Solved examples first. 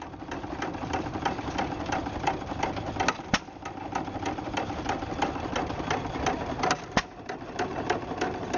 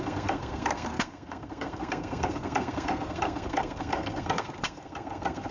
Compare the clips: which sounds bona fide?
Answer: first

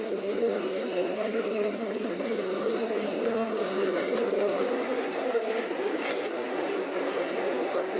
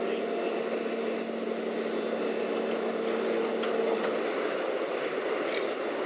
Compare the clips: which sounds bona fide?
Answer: second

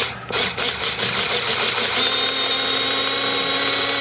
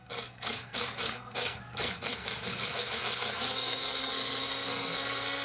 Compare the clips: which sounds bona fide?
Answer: first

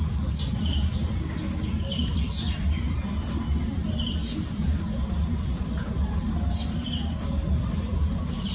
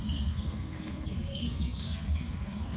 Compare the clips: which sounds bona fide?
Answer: first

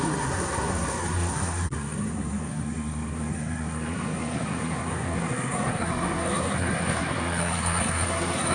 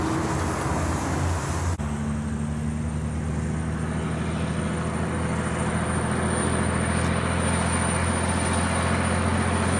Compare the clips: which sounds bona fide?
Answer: second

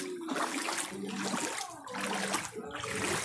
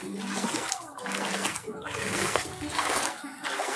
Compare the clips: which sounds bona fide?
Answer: first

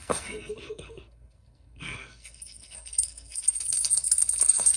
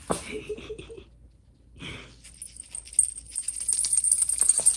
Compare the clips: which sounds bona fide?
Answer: second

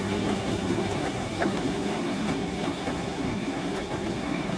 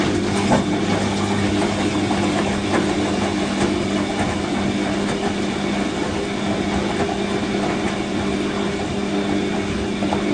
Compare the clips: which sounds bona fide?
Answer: second